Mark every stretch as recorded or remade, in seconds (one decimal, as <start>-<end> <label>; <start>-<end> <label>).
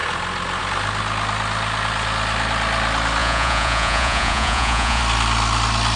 0.0-3.2 recorded; 3.2-5.0 remade; 5.0-6.0 recorded